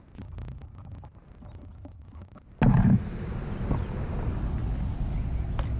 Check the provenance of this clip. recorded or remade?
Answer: recorded